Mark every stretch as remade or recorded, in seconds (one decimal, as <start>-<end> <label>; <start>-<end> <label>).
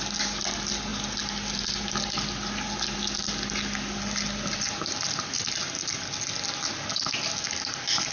0.0-8.1 recorded